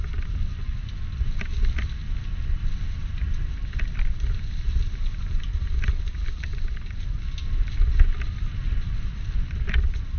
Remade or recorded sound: recorded